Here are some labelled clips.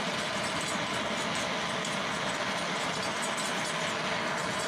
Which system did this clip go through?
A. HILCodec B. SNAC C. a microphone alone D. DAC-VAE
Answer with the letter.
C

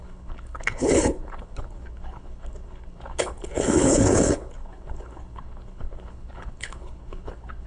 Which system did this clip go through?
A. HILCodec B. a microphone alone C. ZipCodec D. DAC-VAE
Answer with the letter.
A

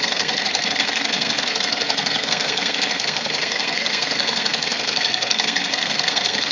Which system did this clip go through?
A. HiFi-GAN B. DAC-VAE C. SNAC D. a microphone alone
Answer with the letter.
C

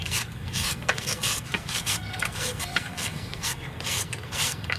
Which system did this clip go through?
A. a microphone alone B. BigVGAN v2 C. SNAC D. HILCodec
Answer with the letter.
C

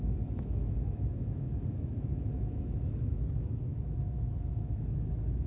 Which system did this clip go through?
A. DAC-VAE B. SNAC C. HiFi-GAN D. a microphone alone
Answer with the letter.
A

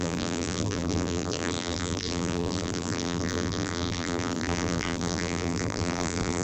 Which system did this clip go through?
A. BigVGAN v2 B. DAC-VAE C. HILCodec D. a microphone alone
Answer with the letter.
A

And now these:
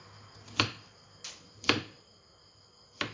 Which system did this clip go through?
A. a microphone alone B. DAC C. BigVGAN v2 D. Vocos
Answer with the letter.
A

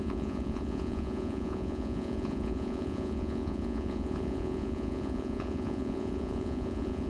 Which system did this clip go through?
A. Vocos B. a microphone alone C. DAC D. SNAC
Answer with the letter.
A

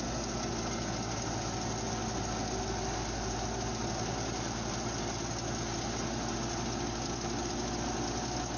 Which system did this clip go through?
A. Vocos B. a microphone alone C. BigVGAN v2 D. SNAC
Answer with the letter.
B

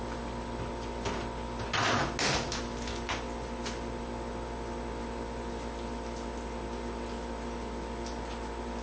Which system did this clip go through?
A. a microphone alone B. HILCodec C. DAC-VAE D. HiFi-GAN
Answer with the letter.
A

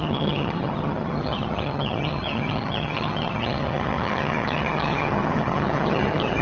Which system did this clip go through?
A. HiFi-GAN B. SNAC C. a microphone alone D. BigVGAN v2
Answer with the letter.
A